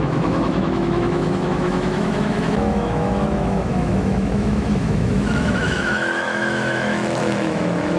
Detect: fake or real fake